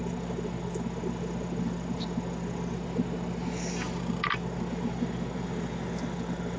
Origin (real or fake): real